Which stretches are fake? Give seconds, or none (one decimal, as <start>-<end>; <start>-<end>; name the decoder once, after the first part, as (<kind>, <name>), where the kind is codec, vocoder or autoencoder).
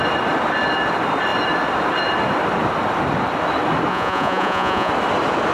3.9-4.9 (vocoder, Vocos)